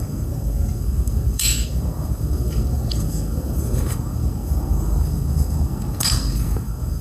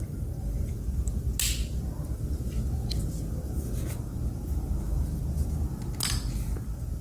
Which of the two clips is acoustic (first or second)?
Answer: second